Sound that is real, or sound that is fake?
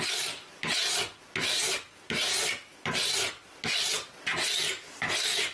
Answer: real